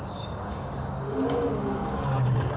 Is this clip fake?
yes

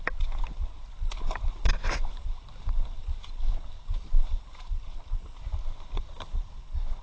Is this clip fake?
no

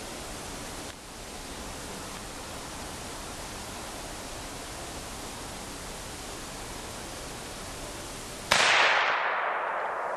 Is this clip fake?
no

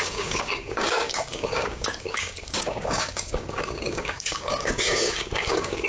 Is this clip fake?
yes